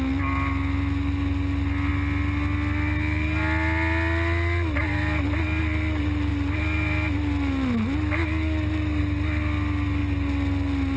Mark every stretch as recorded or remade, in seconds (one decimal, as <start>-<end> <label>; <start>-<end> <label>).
0.0-11.0 recorded

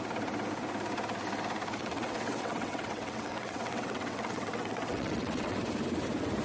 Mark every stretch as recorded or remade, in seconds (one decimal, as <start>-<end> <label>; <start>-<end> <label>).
0.0-1.8 recorded; 1.8-5.6 remade; 5.6-6.4 recorded